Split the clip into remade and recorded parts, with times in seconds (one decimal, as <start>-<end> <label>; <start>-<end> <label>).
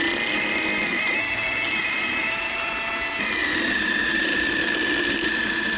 0.0-1.8 recorded; 1.8-2.9 remade; 2.9-5.8 recorded